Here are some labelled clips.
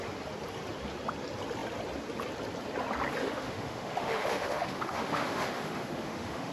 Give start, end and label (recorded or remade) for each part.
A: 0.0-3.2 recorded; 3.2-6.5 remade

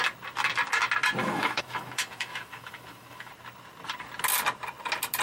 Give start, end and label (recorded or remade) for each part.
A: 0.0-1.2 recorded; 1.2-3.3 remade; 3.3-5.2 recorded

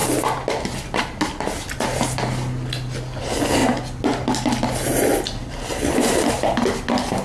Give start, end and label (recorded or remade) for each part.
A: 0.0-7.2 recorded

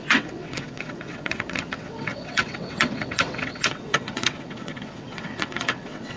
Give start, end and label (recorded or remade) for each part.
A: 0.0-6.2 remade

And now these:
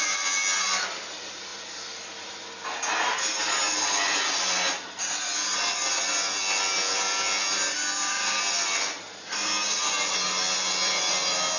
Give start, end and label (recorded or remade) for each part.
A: 0.0-11.6 recorded

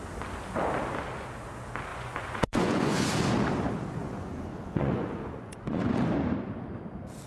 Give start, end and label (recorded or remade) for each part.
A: 0.0-1.9 recorded; 1.9-3.1 remade; 3.1-4.0 recorded; 4.0-6.0 remade; 6.0-7.3 recorded

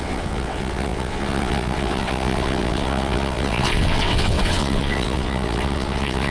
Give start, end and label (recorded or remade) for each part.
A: 0.0-6.3 remade